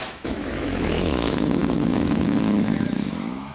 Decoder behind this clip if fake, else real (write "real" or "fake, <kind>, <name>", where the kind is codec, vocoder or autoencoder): fake, autoencoder, DAC-VAE